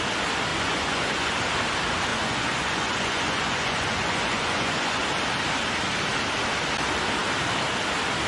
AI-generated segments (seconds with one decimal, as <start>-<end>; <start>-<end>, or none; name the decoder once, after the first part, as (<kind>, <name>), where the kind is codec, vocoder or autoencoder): 0.5-1.3 (vocoder, Vocos); 2.1-5.0